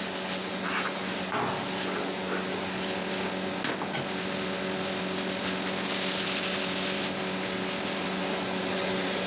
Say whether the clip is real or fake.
real